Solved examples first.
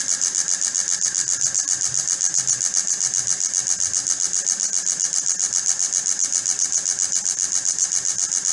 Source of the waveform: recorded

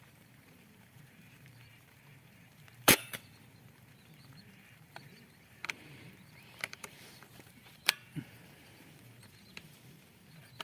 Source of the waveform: remade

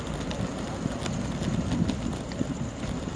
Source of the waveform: recorded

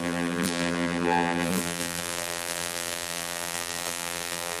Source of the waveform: remade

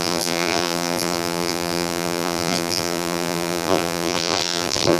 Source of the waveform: remade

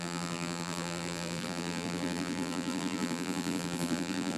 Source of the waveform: remade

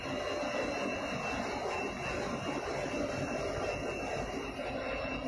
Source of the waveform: recorded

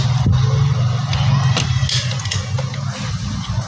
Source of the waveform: recorded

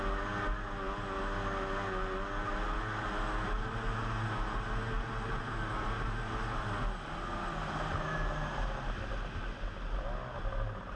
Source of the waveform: recorded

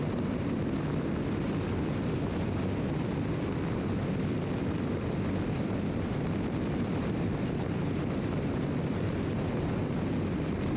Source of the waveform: remade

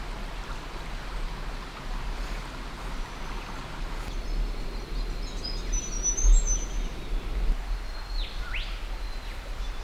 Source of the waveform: recorded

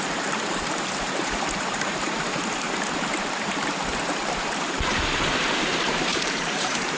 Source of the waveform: remade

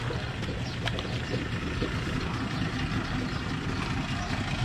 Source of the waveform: recorded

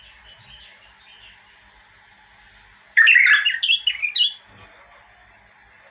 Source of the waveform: recorded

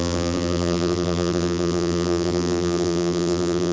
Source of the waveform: remade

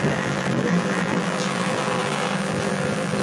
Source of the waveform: remade